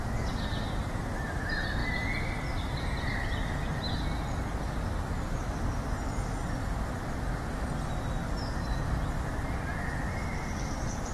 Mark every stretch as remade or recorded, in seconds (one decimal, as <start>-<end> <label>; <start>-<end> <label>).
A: 0.0-11.1 recorded